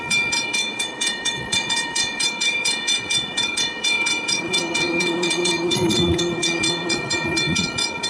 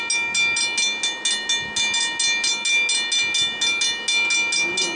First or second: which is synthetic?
first